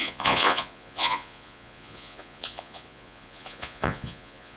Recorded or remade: remade